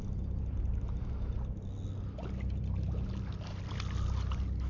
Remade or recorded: recorded